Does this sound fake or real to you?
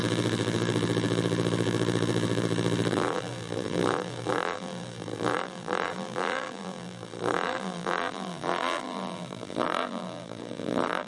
fake